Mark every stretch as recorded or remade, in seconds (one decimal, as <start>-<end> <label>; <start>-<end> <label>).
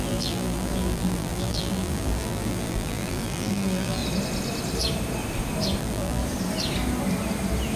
0.0-4.0 remade; 4.0-5.8 recorded; 5.8-6.2 remade; 6.2-7.8 recorded